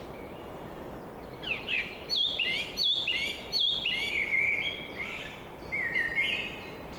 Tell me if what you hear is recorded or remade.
recorded